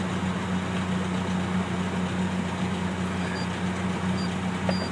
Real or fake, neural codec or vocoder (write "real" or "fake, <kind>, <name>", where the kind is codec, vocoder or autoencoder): real